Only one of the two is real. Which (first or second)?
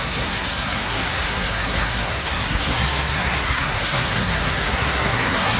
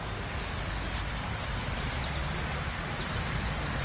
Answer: second